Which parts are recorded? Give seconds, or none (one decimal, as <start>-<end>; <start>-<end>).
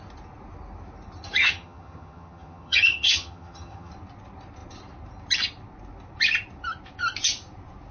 0.0-1.4; 3.9-7.9